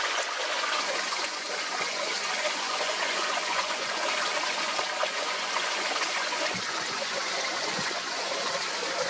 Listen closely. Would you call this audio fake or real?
fake